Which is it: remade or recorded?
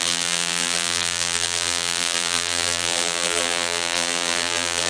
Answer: remade